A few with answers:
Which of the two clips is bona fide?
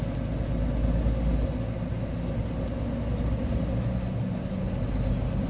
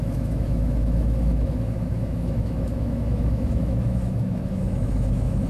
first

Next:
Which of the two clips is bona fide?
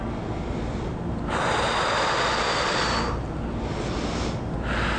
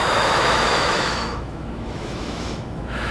first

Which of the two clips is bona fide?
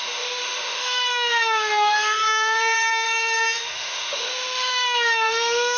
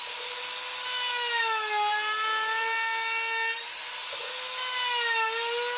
second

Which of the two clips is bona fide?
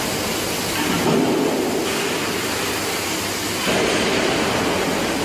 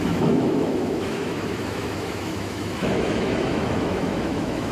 first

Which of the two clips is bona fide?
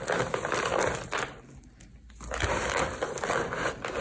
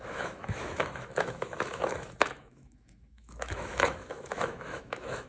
first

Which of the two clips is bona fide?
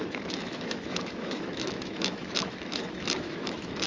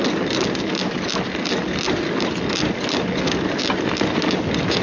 second